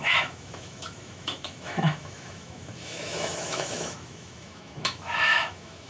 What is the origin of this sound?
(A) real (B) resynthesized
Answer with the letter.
B